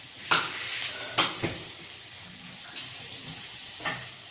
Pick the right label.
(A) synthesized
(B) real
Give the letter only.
B